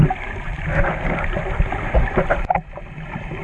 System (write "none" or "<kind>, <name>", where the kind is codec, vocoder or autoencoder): none